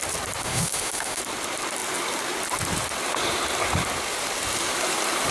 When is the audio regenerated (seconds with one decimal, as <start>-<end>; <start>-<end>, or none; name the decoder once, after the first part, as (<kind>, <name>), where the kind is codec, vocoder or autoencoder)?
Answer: 0.4-1.2 (autoencoder, DAC-VAE)